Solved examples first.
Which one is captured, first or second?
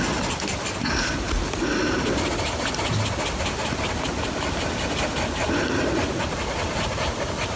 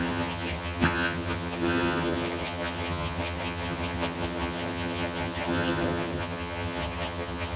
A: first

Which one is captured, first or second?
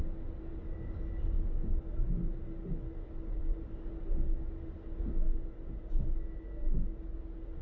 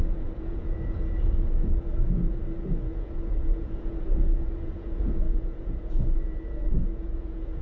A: first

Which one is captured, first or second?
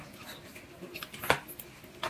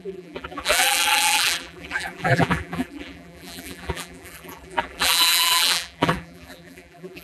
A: first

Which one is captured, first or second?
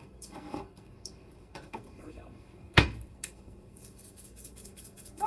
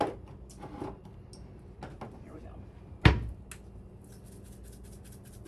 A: second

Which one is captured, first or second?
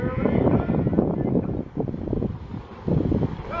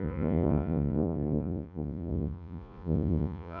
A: first